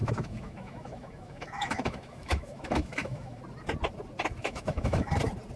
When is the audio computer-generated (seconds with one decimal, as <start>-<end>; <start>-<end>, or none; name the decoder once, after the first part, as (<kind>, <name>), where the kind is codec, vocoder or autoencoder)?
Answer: 0.0-3.4 (autoencoder, DAC-VAE); 4.4-5.1